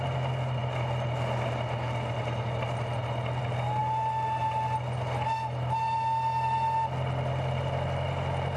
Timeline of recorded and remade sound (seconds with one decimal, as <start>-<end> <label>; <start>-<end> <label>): 0.0-8.6 recorded

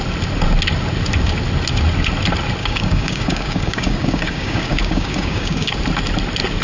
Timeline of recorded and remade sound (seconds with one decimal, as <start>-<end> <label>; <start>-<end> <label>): 0.0-2.6 recorded; 2.6-5.8 remade; 5.8-6.6 recorded

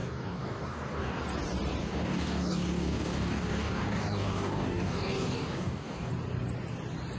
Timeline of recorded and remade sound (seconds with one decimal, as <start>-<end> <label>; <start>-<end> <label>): 0.0-1.2 remade; 1.2-1.8 recorded; 1.8-6.1 remade; 6.1-7.2 recorded

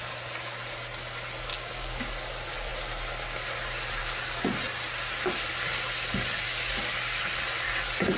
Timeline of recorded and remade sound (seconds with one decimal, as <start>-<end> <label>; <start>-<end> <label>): 0.0-1.5 recorded; 1.5-2.1 remade; 2.1-8.2 recorded